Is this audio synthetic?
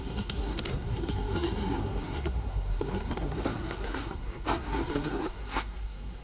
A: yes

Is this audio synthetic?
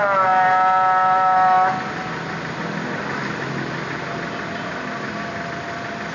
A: no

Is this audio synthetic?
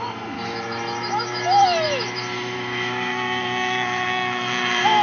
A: yes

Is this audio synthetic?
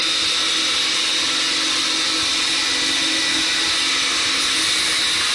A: no